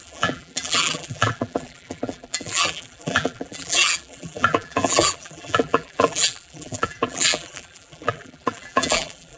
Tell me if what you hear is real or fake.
fake